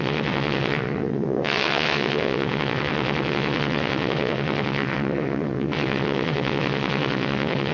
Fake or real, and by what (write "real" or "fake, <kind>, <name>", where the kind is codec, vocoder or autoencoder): fake, vocoder, WaveNeXt